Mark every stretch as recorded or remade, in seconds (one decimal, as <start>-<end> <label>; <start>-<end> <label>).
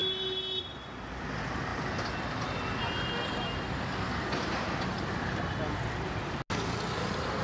0.0-7.4 recorded